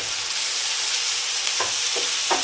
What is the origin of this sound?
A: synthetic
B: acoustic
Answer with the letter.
A